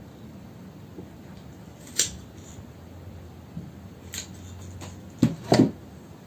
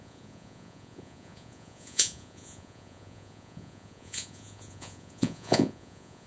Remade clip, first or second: second